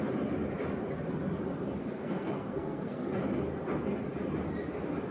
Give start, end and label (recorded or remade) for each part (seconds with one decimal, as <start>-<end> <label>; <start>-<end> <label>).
0.0-1.8 recorded; 1.8-3.2 remade; 3.2-5.1 recorded